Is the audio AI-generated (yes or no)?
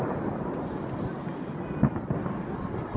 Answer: no